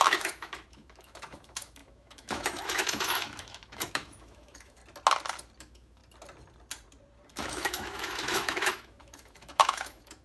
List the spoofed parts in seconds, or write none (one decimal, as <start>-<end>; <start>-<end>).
0.0-4.8; 5.6-6.0; 7.3-10.2